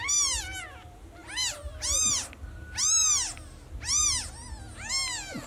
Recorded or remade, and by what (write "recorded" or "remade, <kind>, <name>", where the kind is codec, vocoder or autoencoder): recorded